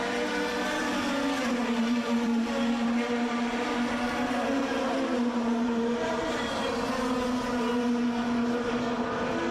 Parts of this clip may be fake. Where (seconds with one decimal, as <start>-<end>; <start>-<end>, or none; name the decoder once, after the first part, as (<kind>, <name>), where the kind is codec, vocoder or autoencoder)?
1.6-6.7 (vocoder, BigVGAN v2)